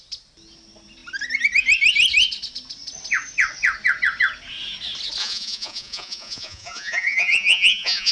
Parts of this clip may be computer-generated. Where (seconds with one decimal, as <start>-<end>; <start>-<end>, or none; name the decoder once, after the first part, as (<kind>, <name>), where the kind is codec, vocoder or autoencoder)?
5.2-8.1 (vocoder, Vocos)